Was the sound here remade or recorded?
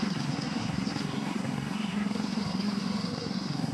remade